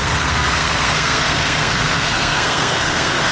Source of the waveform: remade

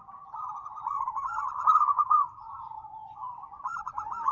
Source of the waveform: remade